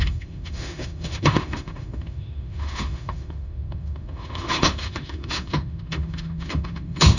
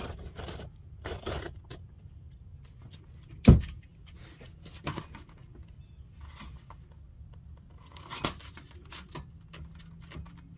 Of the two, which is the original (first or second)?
second